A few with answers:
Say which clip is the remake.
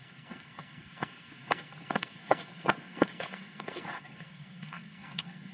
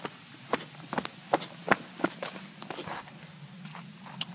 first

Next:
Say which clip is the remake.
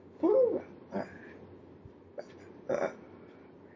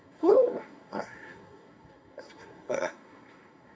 second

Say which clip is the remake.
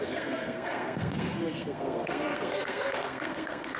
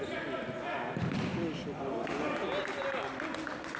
first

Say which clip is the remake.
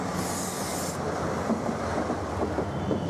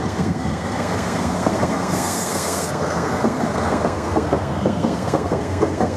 second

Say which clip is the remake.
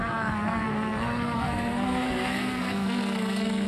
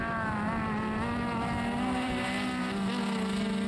first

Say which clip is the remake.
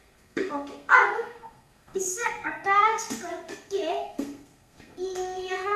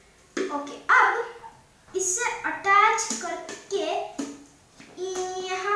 first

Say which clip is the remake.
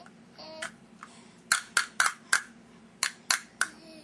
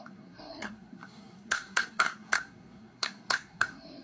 second